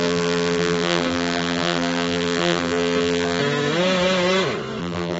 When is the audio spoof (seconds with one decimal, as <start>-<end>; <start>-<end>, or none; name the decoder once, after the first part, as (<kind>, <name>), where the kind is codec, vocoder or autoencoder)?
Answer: 0.0-3.4 (vocoder, BigVGAN v2); 4.8-5.2